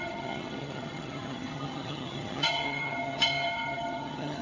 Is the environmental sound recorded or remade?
remade